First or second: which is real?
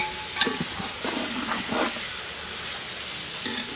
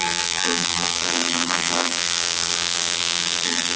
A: first